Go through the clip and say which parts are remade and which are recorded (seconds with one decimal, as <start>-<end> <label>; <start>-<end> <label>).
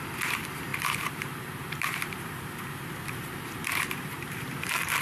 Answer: 0.0-5.0 remade